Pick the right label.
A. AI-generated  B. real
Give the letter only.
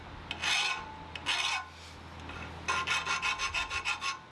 B